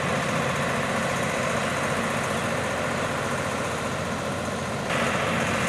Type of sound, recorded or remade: recorded